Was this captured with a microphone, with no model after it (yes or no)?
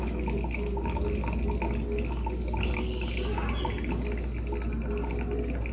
yes